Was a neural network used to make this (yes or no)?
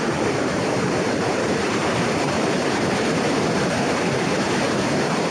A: yes